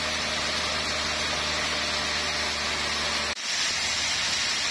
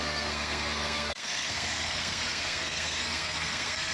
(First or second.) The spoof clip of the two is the second